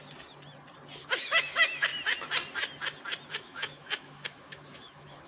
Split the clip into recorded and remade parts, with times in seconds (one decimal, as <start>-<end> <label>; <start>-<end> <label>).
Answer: 0.0-1.0 recorded; 1.0-1.9 remade; 1.9-3.3 recorded; 3.3-5.3 remade